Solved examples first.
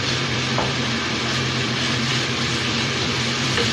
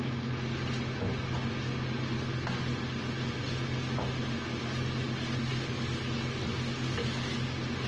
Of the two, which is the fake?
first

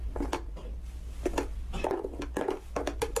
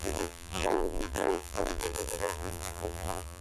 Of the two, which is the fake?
second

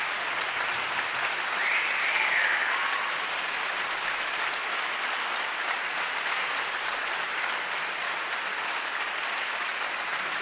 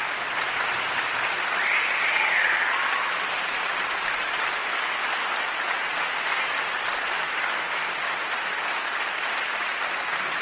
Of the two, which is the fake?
second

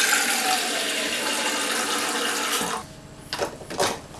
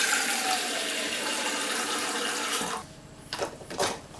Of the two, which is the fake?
second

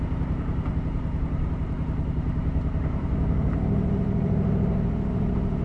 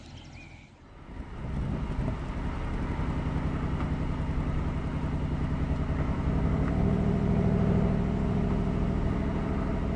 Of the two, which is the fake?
first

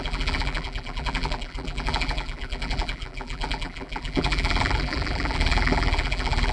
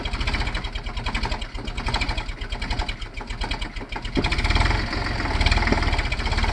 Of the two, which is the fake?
first